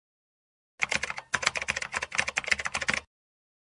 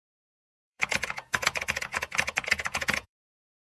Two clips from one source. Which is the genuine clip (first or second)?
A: first